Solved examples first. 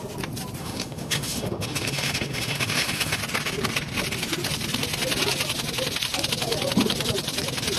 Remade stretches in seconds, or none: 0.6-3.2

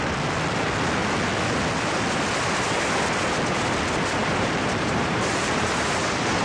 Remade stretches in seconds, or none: 4.2-5.8

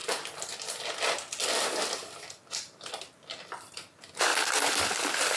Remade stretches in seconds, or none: none

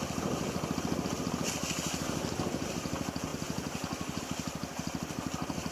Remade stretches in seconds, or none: none

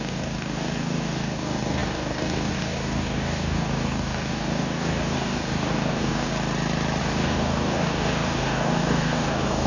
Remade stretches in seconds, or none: 0.0-6.3; 7.0-9.7

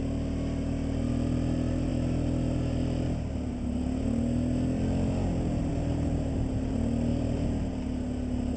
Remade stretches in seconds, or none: 7.1-7.7

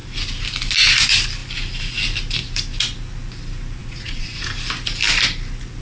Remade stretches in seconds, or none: 3.8-4.5

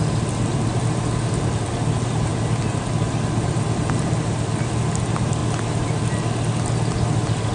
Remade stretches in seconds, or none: none